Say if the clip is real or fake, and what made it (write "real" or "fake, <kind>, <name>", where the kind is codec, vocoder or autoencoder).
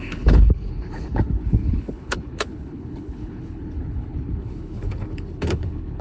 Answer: fake, codec, HILCodec